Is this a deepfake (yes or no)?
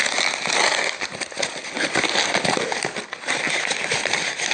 no